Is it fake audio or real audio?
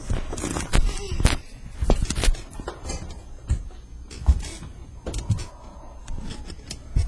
real